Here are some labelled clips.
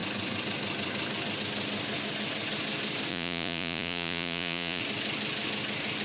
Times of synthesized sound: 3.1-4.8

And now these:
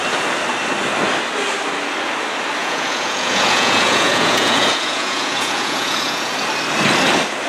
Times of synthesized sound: 2.6-6.3

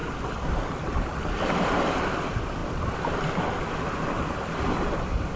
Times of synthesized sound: none

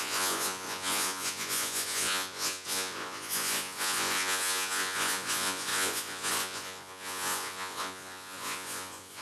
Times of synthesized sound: 0.0-9.2

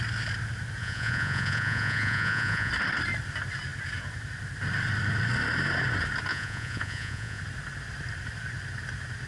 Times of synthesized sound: 0.8-2.7; 6.3-7.4

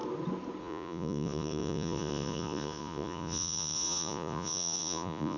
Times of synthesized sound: 0.6-5.4

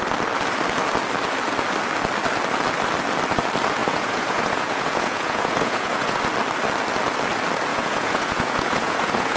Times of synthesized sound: 3.8-6.2; 7.7-9.4

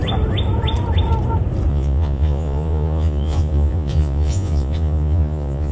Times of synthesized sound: 1.7-5.7